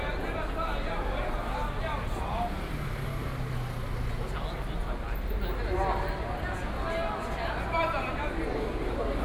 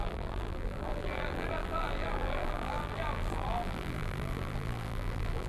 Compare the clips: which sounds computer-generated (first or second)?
second